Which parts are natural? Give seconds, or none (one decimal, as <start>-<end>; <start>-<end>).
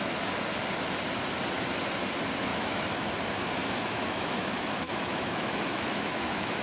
0.0-2.5; 3.1-3.6